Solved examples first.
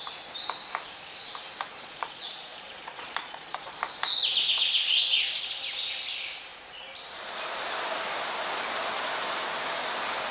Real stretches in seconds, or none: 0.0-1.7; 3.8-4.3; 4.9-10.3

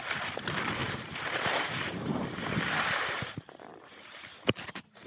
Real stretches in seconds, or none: 0.0-0.8; 3.9-5.1